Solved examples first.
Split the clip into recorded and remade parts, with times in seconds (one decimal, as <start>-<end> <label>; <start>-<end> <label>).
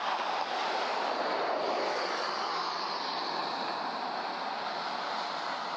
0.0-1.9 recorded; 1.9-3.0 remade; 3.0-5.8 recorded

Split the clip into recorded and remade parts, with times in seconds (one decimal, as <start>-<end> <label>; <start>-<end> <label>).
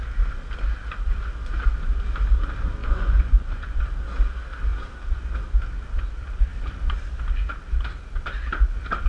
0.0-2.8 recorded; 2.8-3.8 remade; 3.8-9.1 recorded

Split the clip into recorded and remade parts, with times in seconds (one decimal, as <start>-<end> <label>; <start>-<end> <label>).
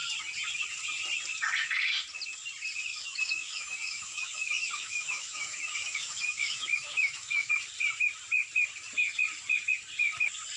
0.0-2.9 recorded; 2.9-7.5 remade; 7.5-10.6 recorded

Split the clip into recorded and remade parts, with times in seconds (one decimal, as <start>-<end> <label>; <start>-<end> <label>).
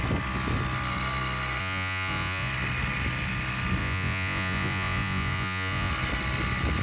0.0-1.6 recorded; 1.6-2.5 remade; 2.5-3.8 recorded; 3.8-5.9 remade; 5.9-6.8 recorded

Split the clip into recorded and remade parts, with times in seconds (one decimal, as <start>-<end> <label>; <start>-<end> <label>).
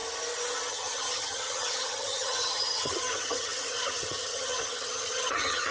0.0-0.7 recorded; 0.7-5.7 remade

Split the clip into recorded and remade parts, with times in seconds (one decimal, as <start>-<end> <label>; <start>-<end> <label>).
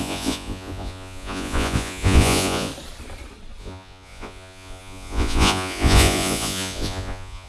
0.0-2.7 remade; 2.7-3.6 recorded; 3.6-7.5 remade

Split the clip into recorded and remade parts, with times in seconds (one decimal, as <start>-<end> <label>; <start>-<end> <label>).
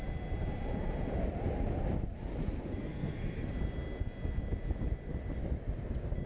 0.0-2.8 recorded; 2.8-3.5 remade; 3.5-6.3 recorded